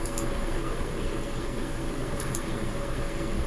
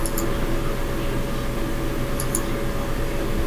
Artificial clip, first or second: first